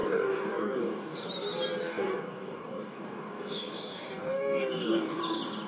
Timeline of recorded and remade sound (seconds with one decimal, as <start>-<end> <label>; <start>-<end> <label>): 0.0-1.3 remade; 1.3-1.8 recorded; 1.8-5.2 remade; 5.2-5.7 recorded